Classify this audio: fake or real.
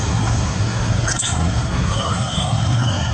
fake